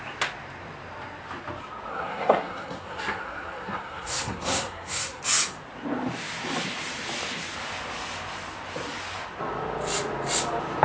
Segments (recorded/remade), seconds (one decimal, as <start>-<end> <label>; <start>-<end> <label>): 0.0-1.9 recorded; 1.9-5.2 remade; 5.2-10.8 recorded

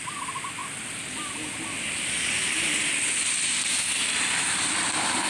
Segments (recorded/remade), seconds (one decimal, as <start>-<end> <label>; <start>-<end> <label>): 0.0-5.3 recorded

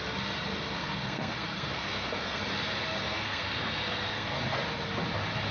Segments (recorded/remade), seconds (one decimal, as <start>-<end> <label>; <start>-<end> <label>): 0.0-0.8 recorded; 0.8-2.4 remade; 2.4-3.0 recorded; 3.0-4.4 remade; 4.4-5.5 recorded

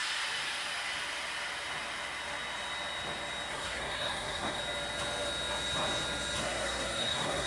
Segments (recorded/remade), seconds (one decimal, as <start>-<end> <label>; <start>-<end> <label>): 0.0-3.5 recorded; 3.5-4.6 remade; 4.6-6.4 recorded; 6.4-7.5 remade

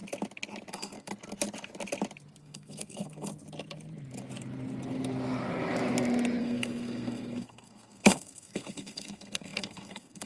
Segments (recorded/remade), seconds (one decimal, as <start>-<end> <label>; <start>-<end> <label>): 0.0-0.7 recorded; 0.7-1.1 remade; 1.1-2.4 recorded; 2.4-3.3 remade; 3.3-6.4 recorded; 6.4-10.3 remade

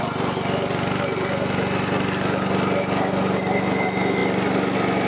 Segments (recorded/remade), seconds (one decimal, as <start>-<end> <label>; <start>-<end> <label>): 0.0-5.1 recorded

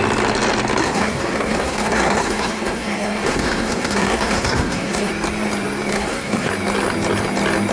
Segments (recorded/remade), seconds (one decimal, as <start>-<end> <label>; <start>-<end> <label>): 0.0-0.8 recorded; 0.8-5.1 remade; 5.1-5.9 recorded; 5.9-6.5 remade; 6.5-7.7 recorded